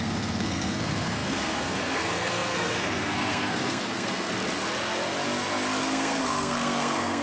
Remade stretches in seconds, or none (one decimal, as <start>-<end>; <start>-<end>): 0.0-4.3; 5.8-7.2